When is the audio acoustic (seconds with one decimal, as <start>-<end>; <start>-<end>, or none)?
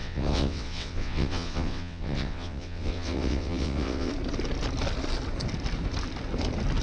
4.1-6.8